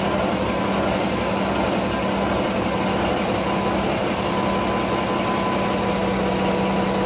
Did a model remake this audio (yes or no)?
no